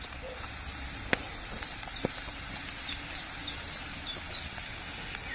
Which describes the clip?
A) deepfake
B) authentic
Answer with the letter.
B